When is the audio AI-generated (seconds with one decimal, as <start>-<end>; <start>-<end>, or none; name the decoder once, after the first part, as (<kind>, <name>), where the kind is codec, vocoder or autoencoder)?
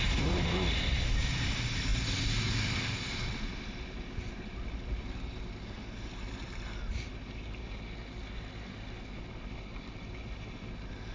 none